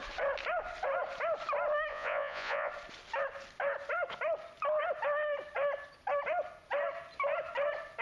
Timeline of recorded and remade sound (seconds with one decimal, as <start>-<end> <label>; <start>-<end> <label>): 0.0-1.9 recorded; 1.9-2.7 remade; 2.7-8.0 recorded